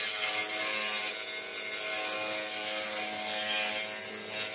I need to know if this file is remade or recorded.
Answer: recorded